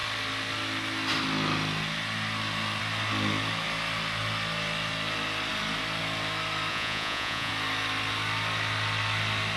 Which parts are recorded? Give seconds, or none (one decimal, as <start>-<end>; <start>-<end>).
0.0-6.7; 7.5-9.6